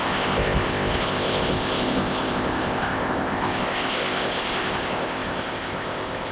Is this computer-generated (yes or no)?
yes